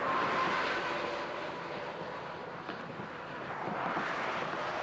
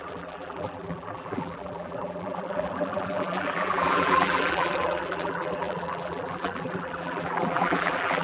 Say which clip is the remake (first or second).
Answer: second